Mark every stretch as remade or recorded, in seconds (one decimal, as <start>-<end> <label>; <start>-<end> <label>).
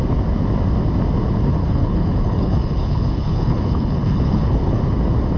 0.0-1.6 recorded; 1.6-4.8 remade; 4.8-5.4 recorded